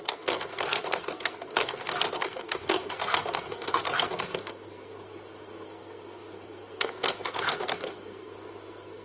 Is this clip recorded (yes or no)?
no